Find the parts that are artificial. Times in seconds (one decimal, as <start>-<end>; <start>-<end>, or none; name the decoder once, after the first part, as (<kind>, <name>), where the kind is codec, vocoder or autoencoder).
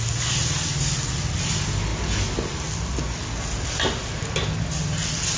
none